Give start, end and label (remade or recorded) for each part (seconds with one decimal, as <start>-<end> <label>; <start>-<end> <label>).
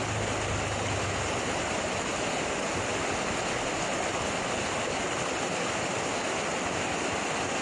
0.0-7.6 recorded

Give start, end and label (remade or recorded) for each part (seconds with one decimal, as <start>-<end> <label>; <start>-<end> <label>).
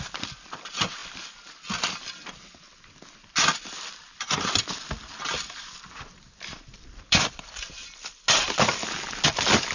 0.0-3.5 recorded; 3.5-7.7 remade; 7.7-9.7 recorded